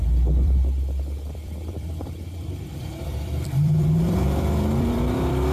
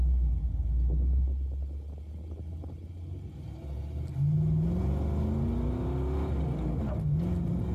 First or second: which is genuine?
second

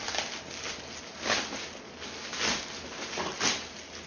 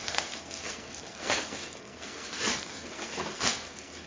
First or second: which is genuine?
first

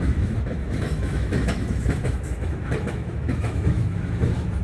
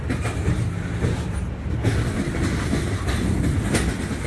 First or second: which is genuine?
second